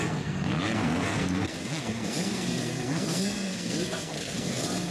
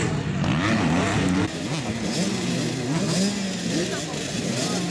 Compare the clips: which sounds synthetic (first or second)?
first